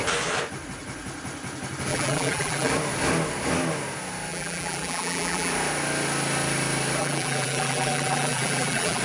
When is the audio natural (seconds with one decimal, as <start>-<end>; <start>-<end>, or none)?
0.0-1.9; 2.7-4.3; 5.5-7.0